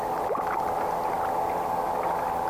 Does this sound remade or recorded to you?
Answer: recorded